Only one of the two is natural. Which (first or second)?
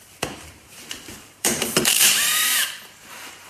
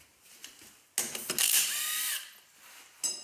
second